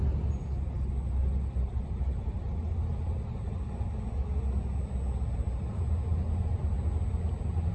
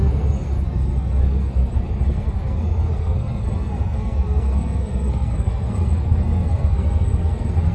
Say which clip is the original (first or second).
first